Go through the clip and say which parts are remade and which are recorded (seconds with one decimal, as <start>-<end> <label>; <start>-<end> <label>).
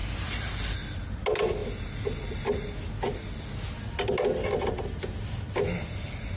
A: 0.0-6.4 recorded